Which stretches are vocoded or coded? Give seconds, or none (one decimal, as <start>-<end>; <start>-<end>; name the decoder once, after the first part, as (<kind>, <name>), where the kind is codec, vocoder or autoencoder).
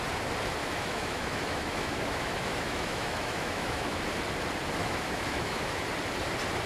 0.6-4.0 (autoencoder, DAC-VAE); 4.8-5.8